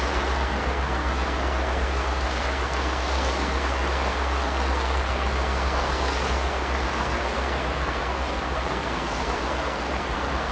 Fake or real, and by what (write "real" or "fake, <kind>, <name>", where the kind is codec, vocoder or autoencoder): fake, codec, SNAC